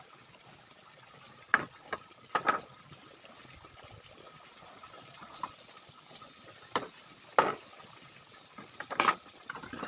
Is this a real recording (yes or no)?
yes